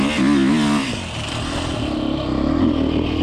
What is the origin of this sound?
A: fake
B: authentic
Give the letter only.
B